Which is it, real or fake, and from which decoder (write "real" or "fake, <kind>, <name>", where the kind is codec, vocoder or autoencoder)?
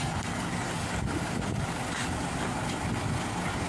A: real